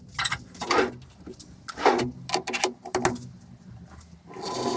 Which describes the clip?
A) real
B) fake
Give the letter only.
A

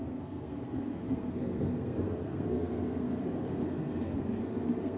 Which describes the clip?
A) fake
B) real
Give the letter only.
A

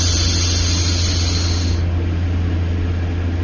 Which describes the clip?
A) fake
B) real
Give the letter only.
B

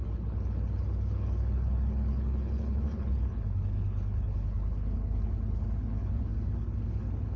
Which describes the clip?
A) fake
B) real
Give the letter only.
A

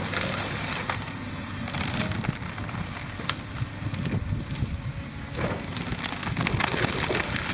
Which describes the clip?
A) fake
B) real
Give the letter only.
A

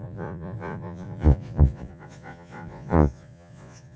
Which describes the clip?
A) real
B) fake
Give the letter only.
B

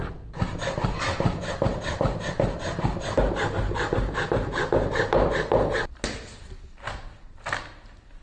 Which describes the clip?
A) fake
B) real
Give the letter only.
B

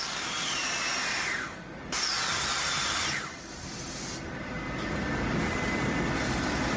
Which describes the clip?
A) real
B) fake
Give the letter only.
A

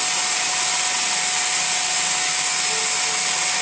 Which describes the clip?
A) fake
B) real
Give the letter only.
B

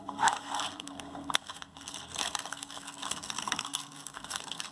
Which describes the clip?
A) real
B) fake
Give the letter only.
B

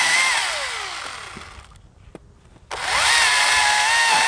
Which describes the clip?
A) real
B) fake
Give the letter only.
A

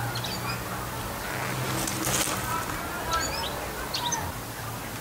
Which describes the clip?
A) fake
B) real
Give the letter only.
B